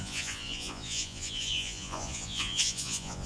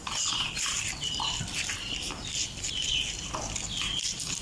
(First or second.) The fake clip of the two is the first